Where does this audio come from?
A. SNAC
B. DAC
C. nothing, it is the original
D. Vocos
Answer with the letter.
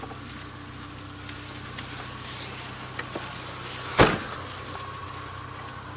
C